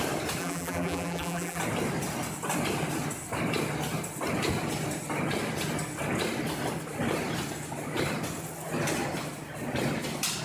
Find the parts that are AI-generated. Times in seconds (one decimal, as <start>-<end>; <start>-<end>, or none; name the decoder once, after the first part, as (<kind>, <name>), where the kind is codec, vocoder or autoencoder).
0.4-1.6 (vocoder, BigVGAN v2)